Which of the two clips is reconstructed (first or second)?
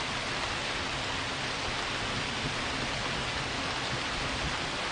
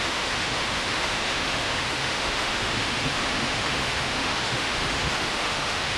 second